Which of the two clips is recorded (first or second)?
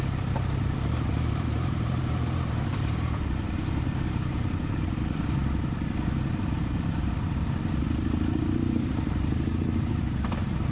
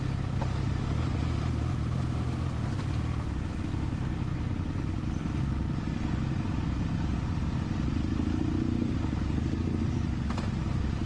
second